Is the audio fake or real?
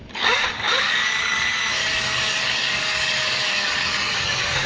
fake